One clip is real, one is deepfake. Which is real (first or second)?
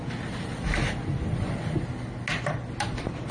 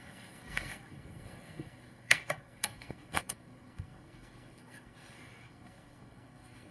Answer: first